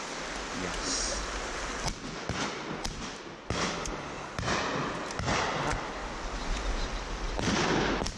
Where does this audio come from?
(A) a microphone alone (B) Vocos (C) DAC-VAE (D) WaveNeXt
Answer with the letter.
A